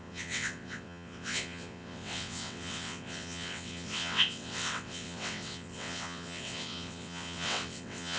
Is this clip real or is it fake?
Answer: fake